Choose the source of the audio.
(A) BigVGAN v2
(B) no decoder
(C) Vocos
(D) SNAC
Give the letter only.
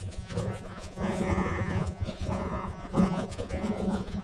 C